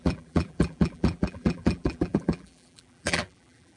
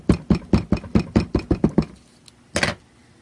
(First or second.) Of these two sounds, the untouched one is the second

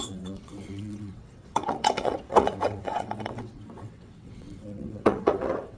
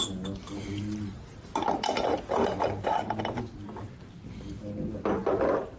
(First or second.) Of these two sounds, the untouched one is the second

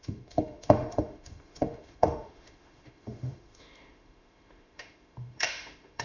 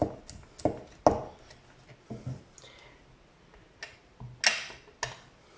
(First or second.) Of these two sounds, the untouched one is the second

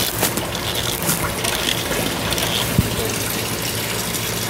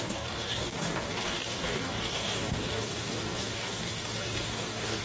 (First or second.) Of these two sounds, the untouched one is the first